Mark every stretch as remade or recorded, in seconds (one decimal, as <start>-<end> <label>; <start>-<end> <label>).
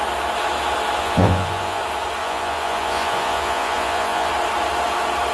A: 0.0-1.0 recorded; 1.0-1.8 remade; 1.8-2.2 recorded; 2.2-4.3 remade; 4.3-5.3 recorded